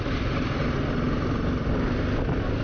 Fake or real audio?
real